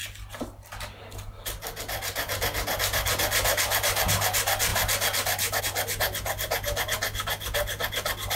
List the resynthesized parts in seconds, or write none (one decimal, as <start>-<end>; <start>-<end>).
none